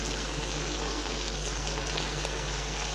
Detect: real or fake fake